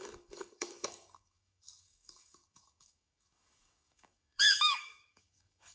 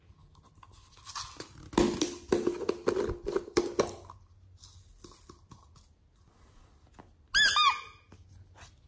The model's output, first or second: first